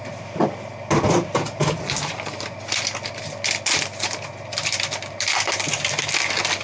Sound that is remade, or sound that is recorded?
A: recorded